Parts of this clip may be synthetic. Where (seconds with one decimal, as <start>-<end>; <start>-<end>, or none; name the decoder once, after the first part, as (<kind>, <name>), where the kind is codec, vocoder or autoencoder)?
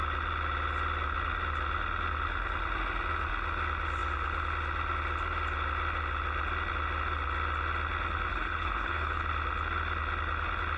8.3-9.2 (codec, HILCodec)